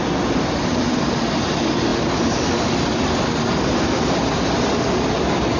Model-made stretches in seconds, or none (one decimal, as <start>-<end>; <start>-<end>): none